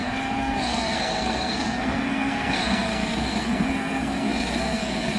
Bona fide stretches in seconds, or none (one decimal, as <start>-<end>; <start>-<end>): none